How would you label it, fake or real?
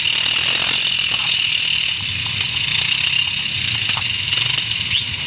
real